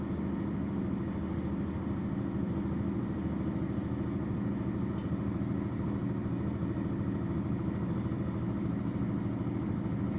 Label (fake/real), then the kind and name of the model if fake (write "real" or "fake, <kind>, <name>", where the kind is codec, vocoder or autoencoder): real